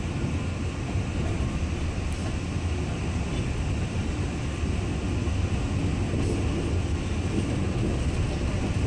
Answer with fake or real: real